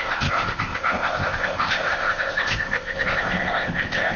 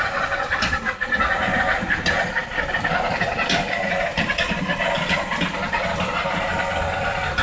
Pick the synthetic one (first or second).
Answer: first